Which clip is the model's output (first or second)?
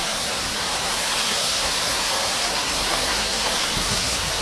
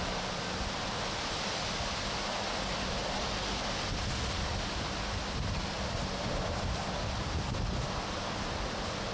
first